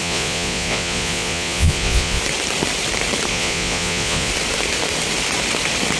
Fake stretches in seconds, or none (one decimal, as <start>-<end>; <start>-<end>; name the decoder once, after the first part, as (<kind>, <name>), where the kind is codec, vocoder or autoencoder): 0.0-2.2 (vocoder, Vocos); 3.3-4.3